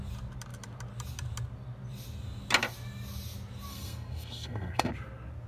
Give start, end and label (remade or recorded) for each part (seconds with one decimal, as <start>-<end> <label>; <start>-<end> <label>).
0.0-3.7 recorded; 3.7-4.9 remade; 4.9-5.5 recorded